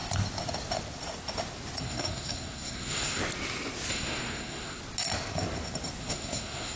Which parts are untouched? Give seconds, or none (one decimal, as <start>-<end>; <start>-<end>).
0.0-1.8; 3.2-3.9; 4.8-6.0